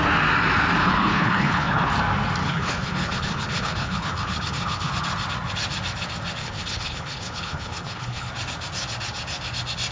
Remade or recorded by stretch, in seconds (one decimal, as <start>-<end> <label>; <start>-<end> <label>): 0.0-0.8 recorded; 0.8-1.9 remade; 1.9-2.4 recorded; 2.4-4.9 remade; 4.9-6.4 recorded; 6.4-8.3 remade; 8.3-9.9 recorded